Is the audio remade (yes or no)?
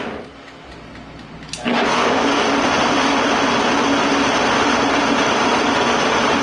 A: no